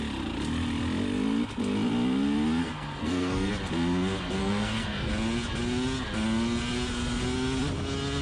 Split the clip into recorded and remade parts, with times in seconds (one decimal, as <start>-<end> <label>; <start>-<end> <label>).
0.0-2.6 recorded; 2.6-3.5 remade; 3.5-4.4 recorded; 4.4-5.1 remade; 5.1-8.2 recorded